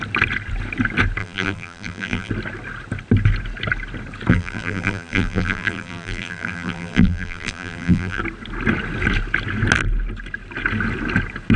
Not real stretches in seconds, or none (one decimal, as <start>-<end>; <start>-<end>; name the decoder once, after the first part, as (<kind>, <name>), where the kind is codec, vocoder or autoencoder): 1.2-2.3 (vocoder, BigVGAN v2); 4.3-8.2